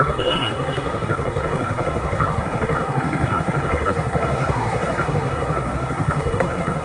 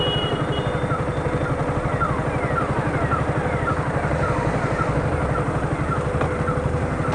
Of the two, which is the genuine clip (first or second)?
second